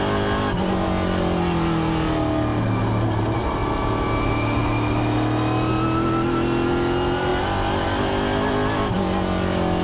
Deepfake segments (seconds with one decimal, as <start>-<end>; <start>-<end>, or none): none